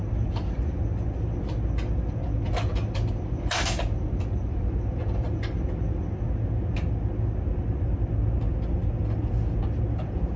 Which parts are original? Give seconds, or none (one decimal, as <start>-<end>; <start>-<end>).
0.0-10.4